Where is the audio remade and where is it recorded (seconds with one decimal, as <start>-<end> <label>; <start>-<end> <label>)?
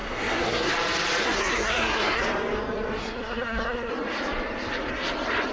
0.0-0.7 remade; 0.7-1.2 recorded; 1.2-2.2 remade; 2.2-3.0 recorded; 3.0-3.9 remade; 3.9-5.5 recorded